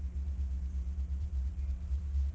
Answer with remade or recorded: remade